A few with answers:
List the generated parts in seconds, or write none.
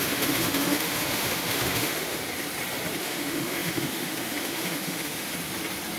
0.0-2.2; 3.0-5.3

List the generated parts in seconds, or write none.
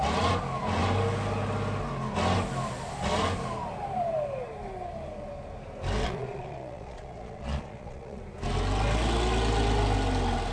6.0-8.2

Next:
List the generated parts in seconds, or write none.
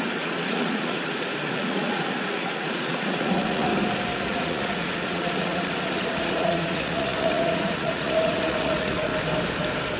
0.0-3.7; 4.2-9.1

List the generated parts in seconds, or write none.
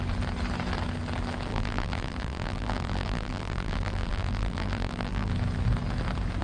1.5-5.3